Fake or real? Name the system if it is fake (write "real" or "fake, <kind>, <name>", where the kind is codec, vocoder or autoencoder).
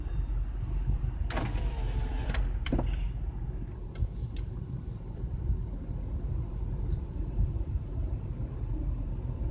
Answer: fake, vocoder, BigVGAN v2